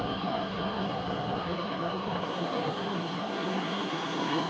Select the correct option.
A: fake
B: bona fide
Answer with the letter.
A